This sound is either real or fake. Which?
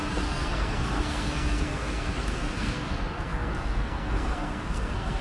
fake